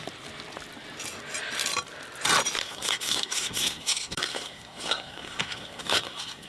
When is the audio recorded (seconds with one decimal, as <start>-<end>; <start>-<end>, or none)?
0.0-2.6